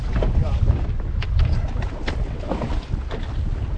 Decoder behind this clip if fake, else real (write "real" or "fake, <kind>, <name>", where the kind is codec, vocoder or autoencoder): real